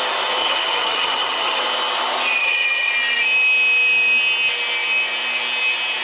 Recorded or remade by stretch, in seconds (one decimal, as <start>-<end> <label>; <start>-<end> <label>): 0.0-0.4 recorded; 0.4-1.6 remade; 1.6-2.4 recorded; 2.4-2.9 remade; 2.9-6.0 recorded